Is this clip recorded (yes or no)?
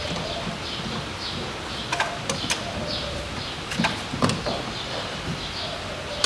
yes